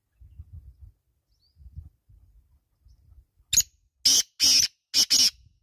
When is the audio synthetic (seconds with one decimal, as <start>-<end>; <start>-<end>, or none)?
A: none